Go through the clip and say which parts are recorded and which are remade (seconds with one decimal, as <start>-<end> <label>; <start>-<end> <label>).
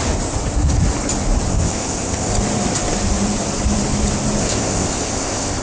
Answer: 0.0-1.5 recorded; 1.5-2.3 remade; 2.3-4.4 recorded; 4.4-5.6 remade